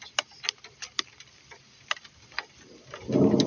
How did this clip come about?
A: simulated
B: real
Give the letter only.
B